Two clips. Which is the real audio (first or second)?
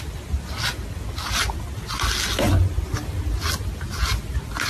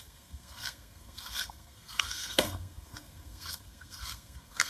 first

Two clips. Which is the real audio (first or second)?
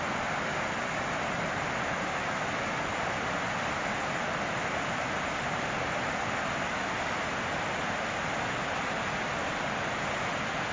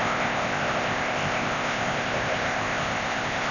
first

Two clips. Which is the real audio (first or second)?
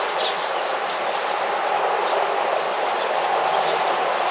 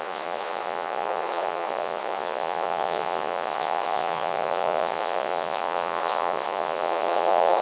first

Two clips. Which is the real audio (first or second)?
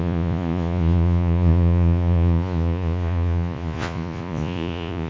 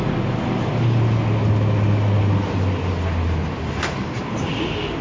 second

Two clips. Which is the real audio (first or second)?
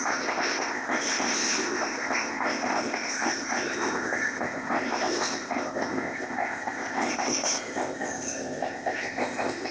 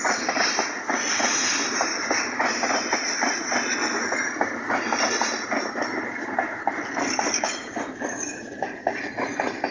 second